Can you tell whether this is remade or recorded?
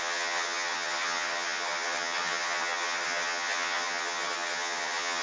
remade